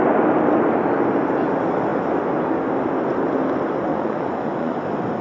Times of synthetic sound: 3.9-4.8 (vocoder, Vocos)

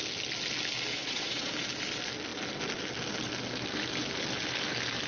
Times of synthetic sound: 0.9-1.5 (vocoder, Vocos)

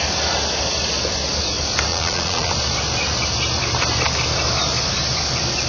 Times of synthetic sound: 1.9-2.5 (vocoder, Vocos)

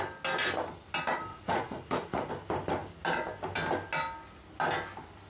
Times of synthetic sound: 1.3-2.3 (vocoder, Vocos)